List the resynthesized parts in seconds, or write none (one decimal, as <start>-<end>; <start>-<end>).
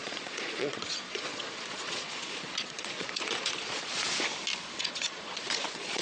0.0-4.1; 4.8-6.0